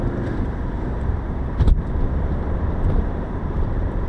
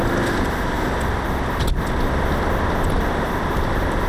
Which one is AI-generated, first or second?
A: first